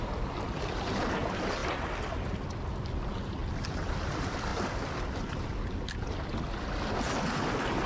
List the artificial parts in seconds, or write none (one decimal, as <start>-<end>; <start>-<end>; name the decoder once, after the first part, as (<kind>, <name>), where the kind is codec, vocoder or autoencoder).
3.4-4.1 (vocoder, BigVGAN v2); 4.5-5.6